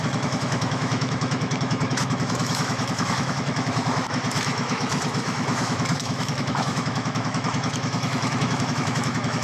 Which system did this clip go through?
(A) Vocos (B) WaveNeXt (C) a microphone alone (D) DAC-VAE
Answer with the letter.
D